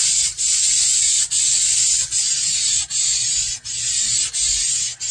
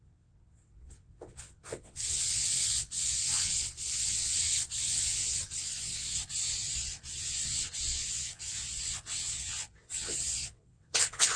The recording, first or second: first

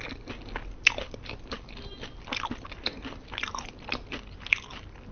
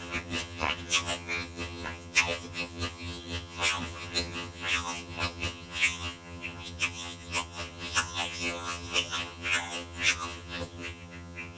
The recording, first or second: first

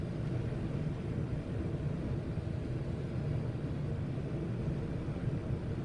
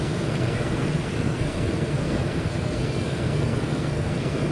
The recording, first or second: first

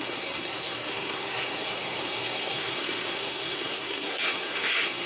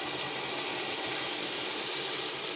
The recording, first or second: second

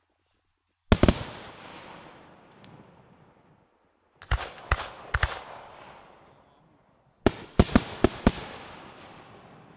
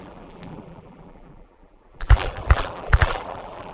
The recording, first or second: first